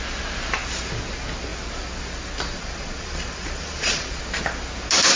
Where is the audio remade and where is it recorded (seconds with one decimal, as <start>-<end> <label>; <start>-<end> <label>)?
0.0-2.5 recorded; 2.5-4.2 remade; 4.2-5.2 recorded